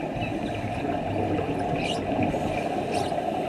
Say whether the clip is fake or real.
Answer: real